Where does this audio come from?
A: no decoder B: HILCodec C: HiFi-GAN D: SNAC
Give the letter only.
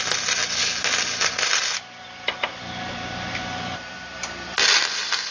A